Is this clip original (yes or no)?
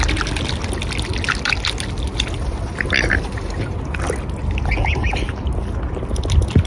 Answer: yes